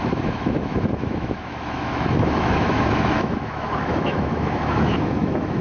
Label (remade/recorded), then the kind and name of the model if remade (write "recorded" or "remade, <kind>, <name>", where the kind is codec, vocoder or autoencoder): remade, autoencoder, DAC-VAE